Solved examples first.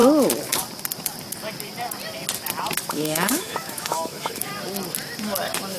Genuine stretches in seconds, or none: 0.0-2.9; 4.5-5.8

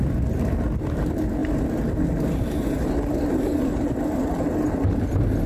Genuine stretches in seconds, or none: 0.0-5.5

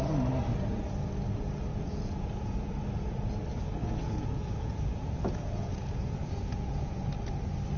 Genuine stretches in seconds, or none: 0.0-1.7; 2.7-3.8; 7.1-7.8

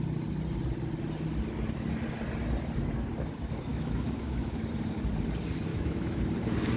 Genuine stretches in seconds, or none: 0.0-3.7; 4.6-5.7; 6.2-6.8

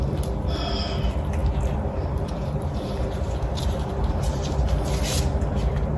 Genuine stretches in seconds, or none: 0.0-1.4; 4.2-6.0

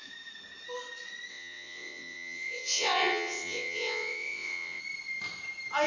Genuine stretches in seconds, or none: 0.0-1.3; 4.8-5.9